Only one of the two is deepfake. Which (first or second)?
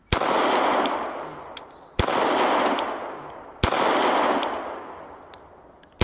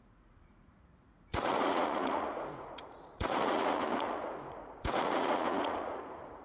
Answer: second